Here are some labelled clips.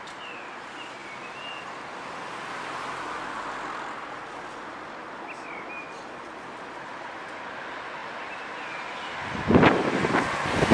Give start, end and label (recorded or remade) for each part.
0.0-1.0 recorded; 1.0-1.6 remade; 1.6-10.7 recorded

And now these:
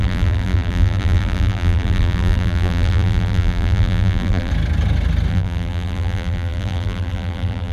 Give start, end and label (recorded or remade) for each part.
0.0-4.5 remade; 4.5-5.3 recorded; 5.3-7.7 remade

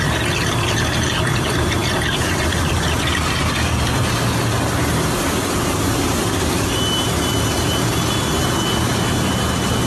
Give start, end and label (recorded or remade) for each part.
0.0-9.9 remade